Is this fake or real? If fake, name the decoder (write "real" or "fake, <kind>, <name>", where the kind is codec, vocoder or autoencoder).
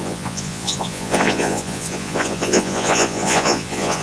fake, vocoder, Vocos